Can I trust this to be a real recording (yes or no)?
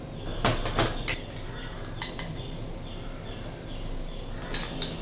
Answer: yes